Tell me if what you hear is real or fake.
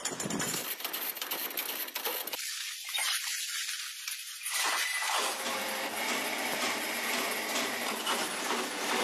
real